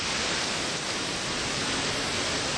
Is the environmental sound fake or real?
real